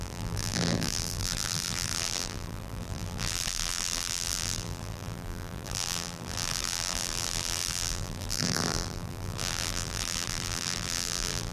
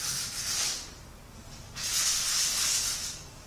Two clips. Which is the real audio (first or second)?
second